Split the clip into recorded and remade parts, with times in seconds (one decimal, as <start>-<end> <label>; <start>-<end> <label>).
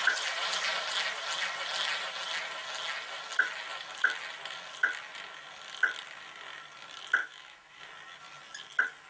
0.0-7.2 recorded; 7.2-7.8 remade; 7.8-9.1 recorded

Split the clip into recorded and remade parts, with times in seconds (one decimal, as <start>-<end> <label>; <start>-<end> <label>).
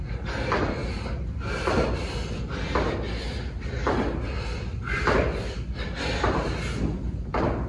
0.0-7.7 recorded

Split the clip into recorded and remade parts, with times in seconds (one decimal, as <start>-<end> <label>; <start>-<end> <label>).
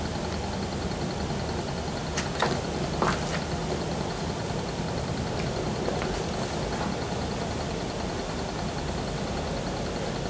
0.0-3.6 recorded; 3.6-6.1 remade; 6.1-10.3 recorded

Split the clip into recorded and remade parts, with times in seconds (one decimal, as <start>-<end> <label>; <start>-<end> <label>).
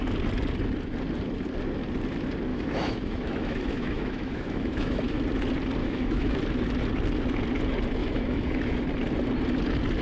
0.0-2.5 recorded; 2.5-5.2 remade; 5.2-5.8 recorded; 5.8-6.4 remade; 6.4-8.0 recorded; 8.0-8.8 remade; 8.8-10.0 recorded